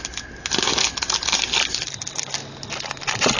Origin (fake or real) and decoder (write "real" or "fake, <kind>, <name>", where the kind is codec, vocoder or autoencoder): real